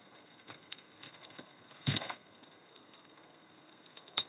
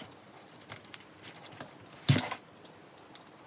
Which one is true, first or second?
second